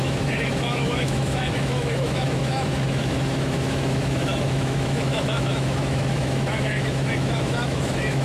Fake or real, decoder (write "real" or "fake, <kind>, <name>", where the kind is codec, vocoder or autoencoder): fake, autoencoder, DAC-VAE